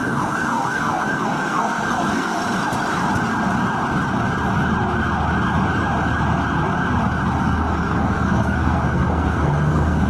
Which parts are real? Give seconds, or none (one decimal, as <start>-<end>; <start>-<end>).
2.4-7.4